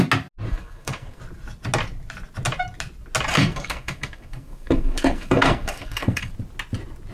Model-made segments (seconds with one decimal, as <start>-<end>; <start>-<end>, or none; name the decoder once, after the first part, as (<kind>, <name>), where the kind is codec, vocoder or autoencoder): 0.5-1.2 (codec, SNAC); 3.3-6.3